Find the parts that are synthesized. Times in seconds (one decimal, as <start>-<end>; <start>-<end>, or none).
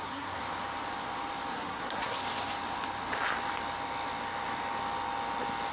0.0-0.4; 1.5-2.2